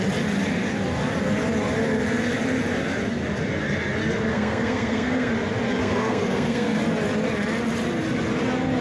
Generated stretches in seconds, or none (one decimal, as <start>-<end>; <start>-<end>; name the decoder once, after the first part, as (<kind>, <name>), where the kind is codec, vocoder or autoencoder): 4.3-5.3 (codec, SNAC); 5.8-6.8